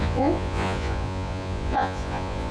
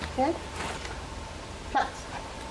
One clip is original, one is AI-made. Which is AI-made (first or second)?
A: first